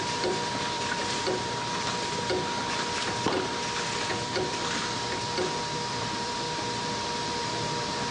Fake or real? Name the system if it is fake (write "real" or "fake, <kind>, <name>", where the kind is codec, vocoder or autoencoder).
fake, vocoder, BigVGAN v2